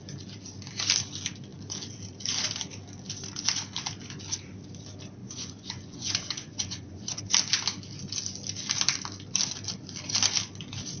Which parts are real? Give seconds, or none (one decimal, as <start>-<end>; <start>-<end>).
0.0-5.2; 7.2-11.0